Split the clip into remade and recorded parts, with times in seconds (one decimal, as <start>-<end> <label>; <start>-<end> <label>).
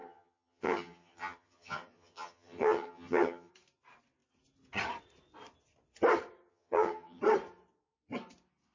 0.0-3.5 remade; 3.5-6.5 recorded; 6.5-7.2 remade; 7.2-8.7 recorded